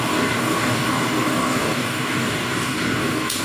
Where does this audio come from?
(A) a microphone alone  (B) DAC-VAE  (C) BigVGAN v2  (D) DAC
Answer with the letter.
D